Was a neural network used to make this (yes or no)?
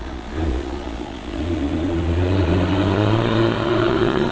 yes